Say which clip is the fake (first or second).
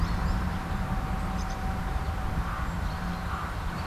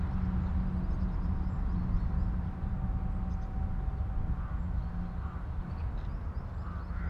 first